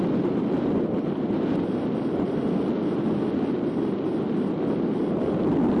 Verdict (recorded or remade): recorded